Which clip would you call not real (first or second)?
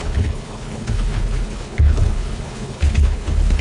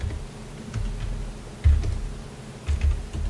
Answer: first